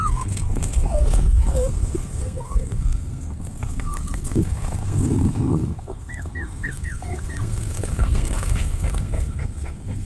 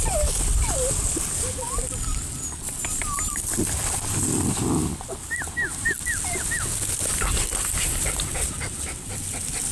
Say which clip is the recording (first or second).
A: second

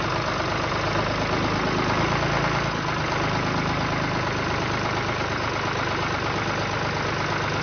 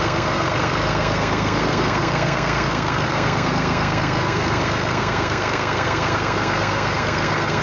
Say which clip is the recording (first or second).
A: first